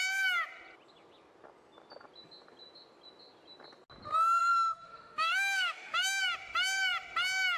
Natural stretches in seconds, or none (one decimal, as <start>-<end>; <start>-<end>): 0.0-4.4; 6.2-7.6

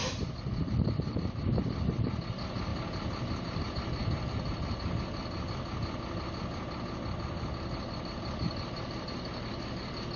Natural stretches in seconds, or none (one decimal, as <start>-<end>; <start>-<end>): 0.0-0.5; 2.7-3.6; 4.0-7.9